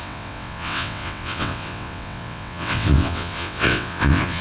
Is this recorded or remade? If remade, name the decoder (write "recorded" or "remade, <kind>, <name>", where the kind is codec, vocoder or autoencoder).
remade, vocoder, WaveNeXt